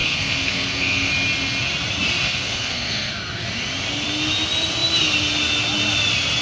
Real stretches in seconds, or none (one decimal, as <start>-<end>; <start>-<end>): 1.1-2.2; 3.1-6.4